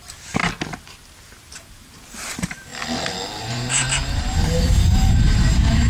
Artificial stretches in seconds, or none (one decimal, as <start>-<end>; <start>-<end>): 0.0-0.4; 1.4-2.7; 3.4-5.9